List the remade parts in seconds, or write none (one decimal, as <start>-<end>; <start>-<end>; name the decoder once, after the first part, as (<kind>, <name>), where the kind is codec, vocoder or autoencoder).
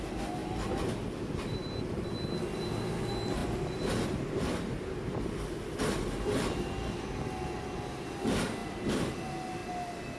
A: 8.6-9.1 (vocoder, BigVGAN v2)